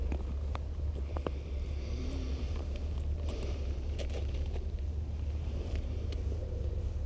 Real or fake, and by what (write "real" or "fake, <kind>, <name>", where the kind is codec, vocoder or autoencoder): fake, vocoder, BigVGAN v2